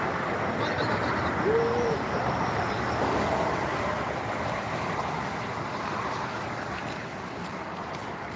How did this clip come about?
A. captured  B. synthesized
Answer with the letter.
B